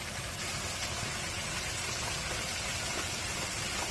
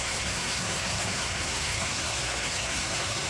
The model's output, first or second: second